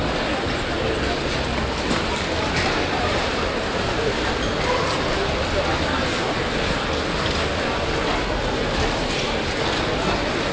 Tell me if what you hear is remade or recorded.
recorded